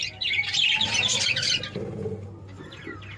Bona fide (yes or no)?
yes